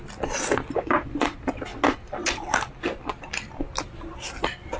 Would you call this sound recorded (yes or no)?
yes